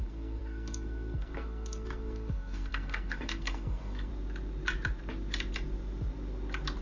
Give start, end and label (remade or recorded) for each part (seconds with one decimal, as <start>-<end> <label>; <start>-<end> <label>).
0.0-4.1 remade; 4.1-6.8 recorded